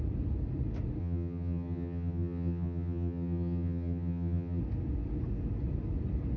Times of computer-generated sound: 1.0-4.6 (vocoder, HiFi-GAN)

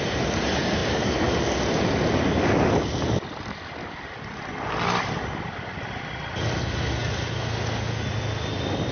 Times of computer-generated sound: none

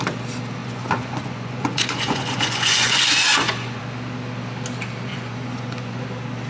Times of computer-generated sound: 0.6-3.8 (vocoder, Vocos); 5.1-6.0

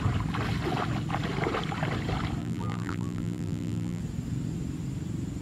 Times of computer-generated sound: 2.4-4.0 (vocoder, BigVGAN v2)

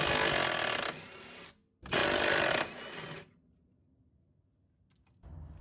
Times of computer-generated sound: none